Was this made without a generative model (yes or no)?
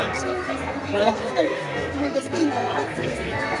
no